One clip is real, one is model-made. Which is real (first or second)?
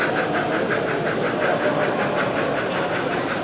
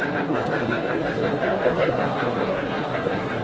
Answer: first